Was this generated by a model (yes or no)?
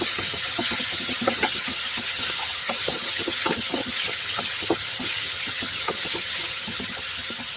yes